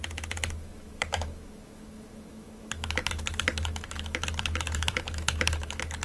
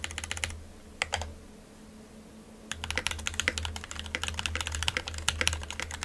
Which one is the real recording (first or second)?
second